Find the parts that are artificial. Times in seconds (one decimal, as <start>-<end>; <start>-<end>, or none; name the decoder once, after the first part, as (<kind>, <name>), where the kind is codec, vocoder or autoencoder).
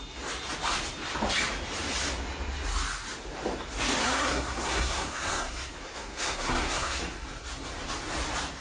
4.0-7.0 (codec, SNAC)